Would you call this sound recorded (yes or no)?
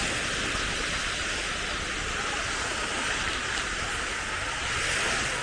yes